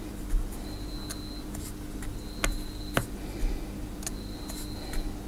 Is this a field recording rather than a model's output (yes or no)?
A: yes